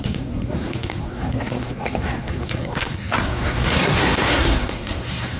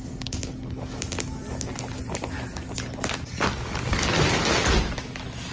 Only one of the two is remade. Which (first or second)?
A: first